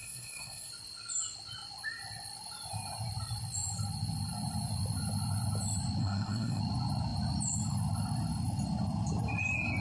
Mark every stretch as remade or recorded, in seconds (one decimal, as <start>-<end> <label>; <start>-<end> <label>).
0.0-0.7 remade; 0.7-6.0 recorded; 6.0-6.6 remade; 6.6-9.8 recorded